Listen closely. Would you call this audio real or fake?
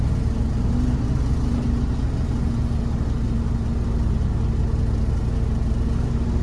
real